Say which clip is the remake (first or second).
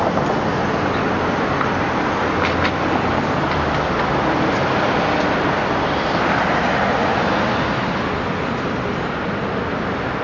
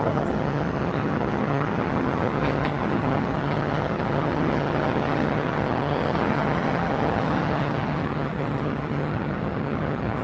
second